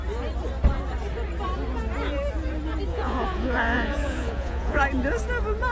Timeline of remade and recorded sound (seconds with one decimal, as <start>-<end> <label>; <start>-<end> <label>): 0.0-2.9 recorded; 2.9-4.8 remade; 4.8-5.7 recorded